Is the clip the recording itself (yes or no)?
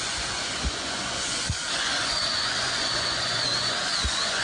no